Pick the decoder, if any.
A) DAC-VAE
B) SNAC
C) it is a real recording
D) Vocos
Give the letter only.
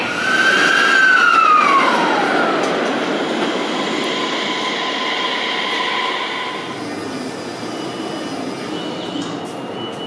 C